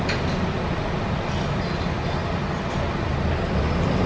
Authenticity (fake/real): real